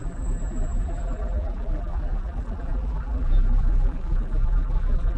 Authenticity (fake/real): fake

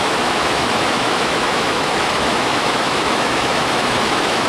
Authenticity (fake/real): fake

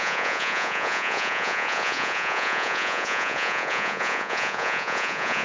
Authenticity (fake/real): fake